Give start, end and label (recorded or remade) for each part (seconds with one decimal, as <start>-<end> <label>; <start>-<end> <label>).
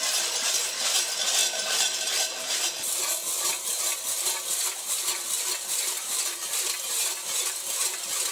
0.0-1.4 recorded; 1.4-2.7 remade; 2.7-8.3 recorded